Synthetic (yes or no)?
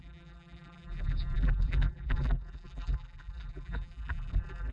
yes